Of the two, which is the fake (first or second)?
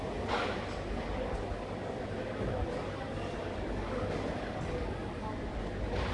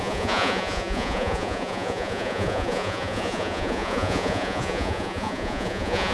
second